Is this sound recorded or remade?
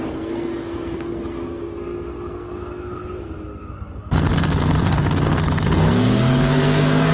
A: remade